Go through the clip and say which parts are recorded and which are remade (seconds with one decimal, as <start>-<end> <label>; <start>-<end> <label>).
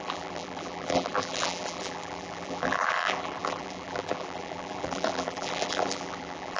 0.0-6.6 remade